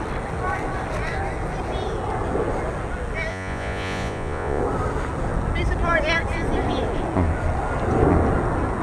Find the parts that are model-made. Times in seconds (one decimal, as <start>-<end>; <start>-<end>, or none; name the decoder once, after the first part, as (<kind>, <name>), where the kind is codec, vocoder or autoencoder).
3.3-4.6 (vocoder, Vocos)